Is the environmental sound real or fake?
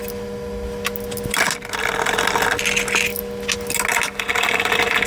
real